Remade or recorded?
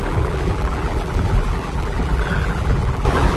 remade